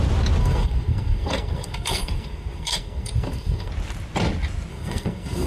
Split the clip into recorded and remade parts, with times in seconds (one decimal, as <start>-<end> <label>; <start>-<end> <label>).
0.0-0.4 recorded; 0.4-3.7 remade; 3.7-4.7 recorded; 4.7-5.5 remade